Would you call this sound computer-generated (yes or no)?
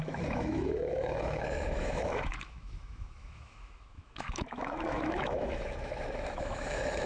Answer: yes